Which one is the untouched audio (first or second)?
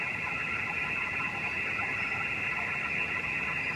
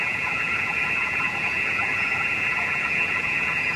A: first